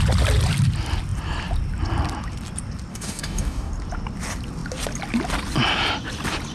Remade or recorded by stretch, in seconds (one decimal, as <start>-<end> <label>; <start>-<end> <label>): 0.0-2.9 recorded; 2.9-3.7 remade; 3.7-6.5 recorded